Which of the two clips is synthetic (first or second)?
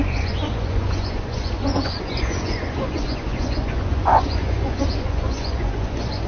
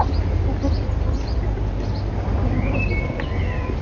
first